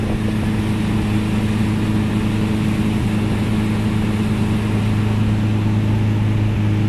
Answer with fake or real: real